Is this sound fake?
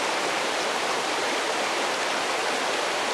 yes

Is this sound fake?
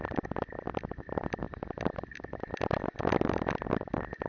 no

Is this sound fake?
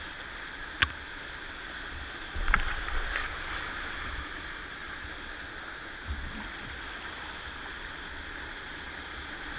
no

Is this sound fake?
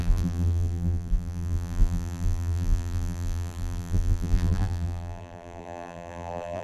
yes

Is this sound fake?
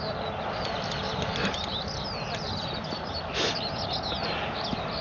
no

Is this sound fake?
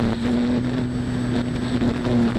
no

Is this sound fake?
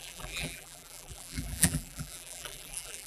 yes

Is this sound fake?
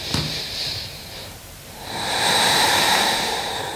yes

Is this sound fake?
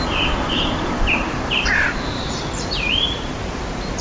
yes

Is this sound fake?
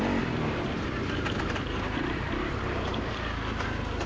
yes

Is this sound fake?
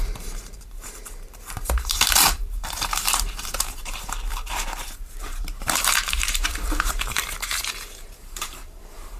yes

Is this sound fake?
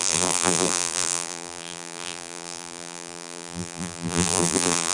yes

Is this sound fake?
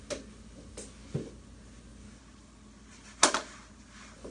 no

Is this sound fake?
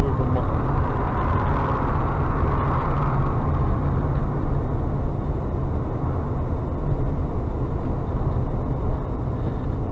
no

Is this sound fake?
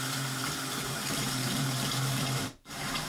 yes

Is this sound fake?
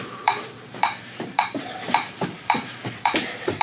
yes